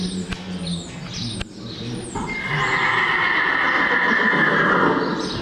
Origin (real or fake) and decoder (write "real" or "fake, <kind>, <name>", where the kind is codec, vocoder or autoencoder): real